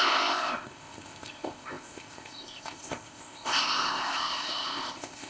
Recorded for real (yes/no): no